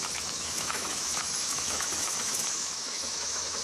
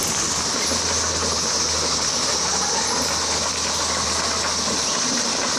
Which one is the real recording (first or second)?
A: second